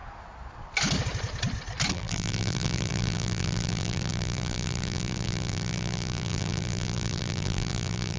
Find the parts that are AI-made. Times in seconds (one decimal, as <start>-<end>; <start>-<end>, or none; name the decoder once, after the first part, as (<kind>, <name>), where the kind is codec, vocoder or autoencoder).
1.9-8.2 (vocoder, BigVGAN v2)